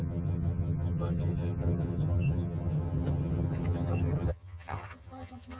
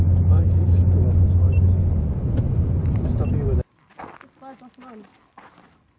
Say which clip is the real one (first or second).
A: second